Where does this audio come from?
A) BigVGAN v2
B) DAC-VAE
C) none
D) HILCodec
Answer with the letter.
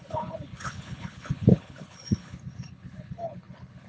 D